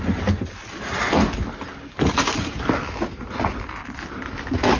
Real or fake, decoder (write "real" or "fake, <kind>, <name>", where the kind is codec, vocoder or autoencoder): real